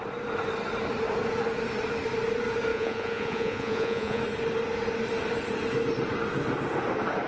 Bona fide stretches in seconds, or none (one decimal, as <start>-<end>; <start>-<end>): 0.0-2.7; 4.2-7.3